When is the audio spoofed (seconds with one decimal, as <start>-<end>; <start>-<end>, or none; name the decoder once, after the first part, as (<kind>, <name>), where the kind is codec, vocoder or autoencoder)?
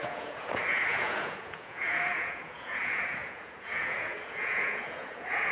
0.0-5.5 (vocoder, Vocos)